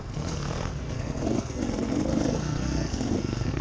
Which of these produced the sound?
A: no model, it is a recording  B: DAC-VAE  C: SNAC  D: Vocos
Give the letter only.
C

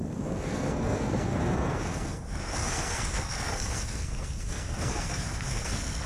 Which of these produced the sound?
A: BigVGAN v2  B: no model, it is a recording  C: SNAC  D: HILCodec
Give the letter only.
C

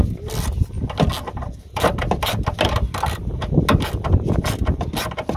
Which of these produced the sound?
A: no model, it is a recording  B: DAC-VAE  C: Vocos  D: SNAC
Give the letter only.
A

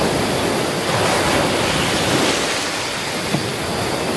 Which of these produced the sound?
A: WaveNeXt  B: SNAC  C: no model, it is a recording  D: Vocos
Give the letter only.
C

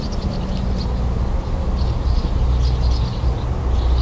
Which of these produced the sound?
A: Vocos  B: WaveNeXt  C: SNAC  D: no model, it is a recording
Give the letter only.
D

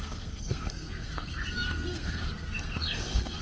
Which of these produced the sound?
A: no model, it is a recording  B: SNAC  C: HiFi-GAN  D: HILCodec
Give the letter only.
B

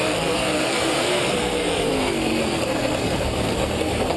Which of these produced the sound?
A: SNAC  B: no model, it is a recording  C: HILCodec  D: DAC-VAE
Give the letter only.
A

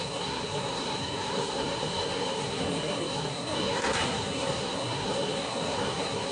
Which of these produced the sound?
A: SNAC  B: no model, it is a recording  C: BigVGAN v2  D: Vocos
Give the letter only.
A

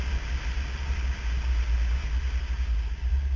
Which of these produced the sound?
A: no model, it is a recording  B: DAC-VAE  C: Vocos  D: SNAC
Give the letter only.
A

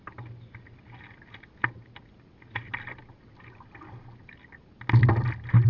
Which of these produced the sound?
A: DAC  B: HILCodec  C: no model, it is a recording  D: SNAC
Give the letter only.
C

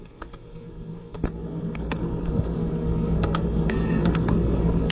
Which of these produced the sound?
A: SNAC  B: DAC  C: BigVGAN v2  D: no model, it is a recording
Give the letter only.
A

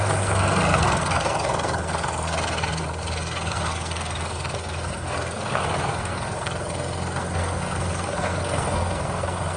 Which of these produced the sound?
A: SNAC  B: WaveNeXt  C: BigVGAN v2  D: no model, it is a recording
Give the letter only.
A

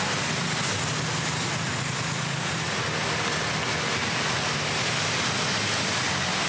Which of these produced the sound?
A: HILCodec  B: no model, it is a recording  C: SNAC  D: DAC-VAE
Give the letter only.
B